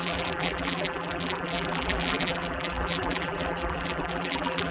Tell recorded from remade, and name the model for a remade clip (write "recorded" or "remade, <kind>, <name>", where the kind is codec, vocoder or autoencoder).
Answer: remade, vocoder, BigVGAN v2